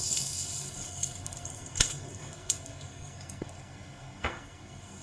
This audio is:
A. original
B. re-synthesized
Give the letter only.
B